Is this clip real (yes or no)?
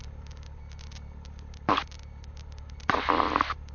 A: yes